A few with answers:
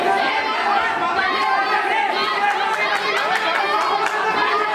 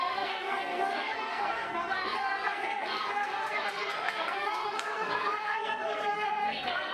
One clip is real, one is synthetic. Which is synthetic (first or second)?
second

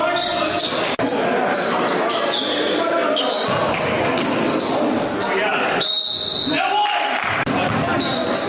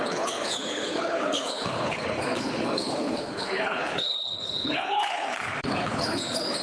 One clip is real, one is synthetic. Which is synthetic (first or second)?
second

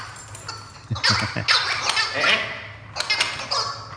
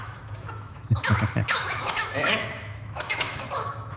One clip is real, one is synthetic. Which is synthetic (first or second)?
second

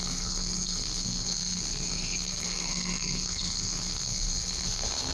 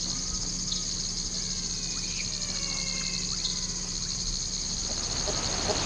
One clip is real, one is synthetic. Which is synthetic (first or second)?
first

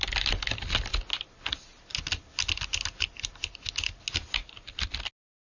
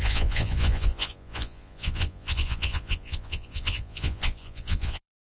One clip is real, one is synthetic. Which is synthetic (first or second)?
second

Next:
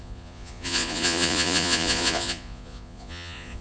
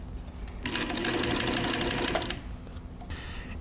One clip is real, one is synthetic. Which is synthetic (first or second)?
first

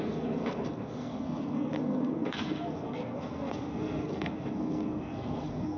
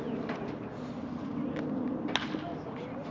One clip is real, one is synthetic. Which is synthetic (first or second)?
first